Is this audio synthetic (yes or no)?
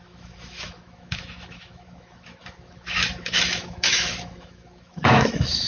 yes